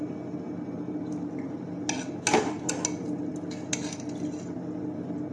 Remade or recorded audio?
recorded